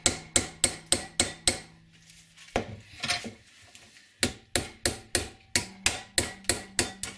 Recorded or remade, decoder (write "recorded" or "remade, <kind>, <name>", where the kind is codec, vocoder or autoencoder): recorded